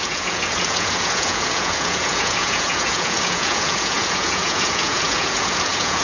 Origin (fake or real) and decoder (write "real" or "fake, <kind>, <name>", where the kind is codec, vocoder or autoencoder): fake, vocoder, Vocos